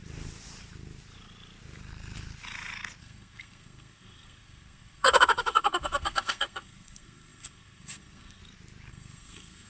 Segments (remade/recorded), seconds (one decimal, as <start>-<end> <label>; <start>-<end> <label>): 0.0-3.0 recorded; 3.0-8.4 remade; 8.4-8.9 recorded; 8.9-9.7 remade